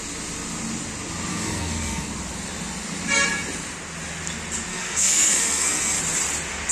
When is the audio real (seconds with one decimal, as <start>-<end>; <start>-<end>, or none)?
0.0-1.3; 2.1-4.7; 6.0-6.7